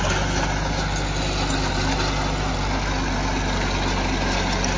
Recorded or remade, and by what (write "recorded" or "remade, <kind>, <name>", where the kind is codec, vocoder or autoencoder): recorded